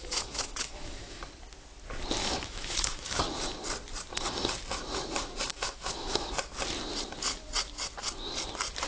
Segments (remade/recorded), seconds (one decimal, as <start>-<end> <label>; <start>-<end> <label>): 0.0-1.2 remade; 1.2-2.2 recorded; 2.2-3.2 remade; 3.2-5.5 recorded; 5.5-6.3 remade; 6.3-8.9 recorded